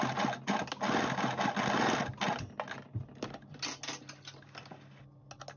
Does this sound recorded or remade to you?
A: recorded